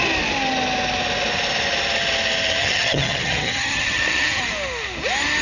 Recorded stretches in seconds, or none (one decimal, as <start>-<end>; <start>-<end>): 0.0-2.6; 4.4-5.4